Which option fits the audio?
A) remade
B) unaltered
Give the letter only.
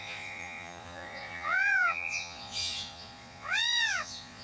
A